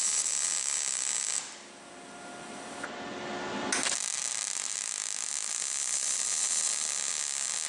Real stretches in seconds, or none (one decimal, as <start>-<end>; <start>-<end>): 0.0-7.7